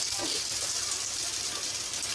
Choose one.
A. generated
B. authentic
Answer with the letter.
B